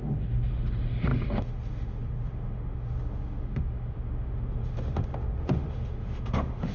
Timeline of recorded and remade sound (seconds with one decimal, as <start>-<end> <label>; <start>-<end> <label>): 0.0-6.7 remade